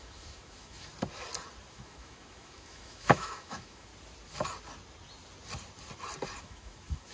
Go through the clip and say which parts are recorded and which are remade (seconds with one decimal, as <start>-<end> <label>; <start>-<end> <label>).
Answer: 0.0-0.9 remade; 0.9-1.7 recorded; 1.7-3.9 remade; 3.9-6.4 recorded; 6.4-7.1 remade